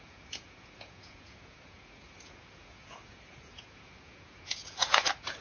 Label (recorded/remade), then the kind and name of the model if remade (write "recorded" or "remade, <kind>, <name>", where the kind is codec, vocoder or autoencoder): remade, vocoder, Vocos